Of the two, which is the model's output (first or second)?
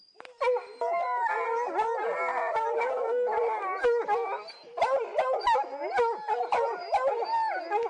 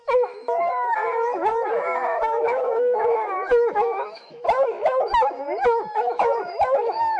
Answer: second